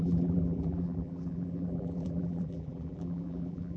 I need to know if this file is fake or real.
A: fake